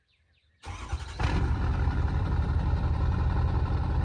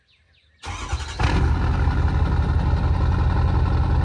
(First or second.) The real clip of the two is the second